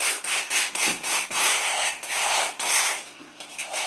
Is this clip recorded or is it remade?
remade